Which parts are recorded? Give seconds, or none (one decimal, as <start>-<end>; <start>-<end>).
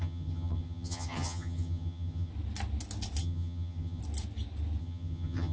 2.3-3.2; 4.0-4.8